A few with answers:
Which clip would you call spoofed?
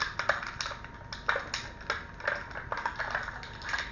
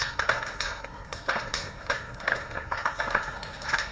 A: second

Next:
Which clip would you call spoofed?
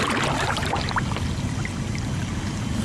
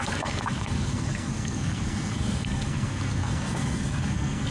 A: second